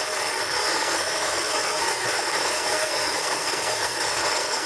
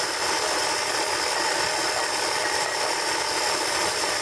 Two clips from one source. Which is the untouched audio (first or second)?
second